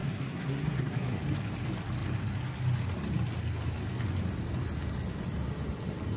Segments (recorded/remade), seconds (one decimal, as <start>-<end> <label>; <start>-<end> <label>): 0.0-1.2 remade; 1.2-6.2 recorded